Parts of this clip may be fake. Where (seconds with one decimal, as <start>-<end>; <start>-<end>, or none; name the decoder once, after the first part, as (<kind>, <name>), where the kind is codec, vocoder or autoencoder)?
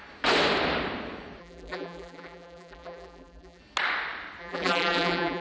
1.4-3.6 (vocoder, BigVGAN v2); 4.4-5.4